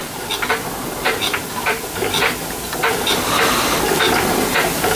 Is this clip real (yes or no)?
no